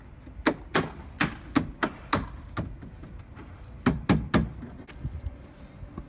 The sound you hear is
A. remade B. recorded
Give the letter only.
B